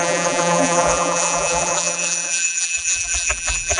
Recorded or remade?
remade